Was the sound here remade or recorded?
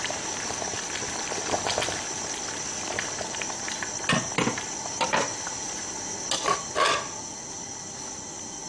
recorded